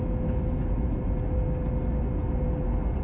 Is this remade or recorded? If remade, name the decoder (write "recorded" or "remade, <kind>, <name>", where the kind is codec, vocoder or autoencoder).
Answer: recorded